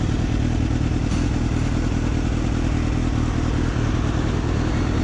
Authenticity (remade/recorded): recorded